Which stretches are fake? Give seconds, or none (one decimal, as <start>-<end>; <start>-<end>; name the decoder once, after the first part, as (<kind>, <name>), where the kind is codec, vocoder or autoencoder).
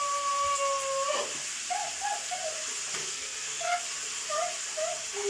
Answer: 3.0-3.8 (codec, SNAC)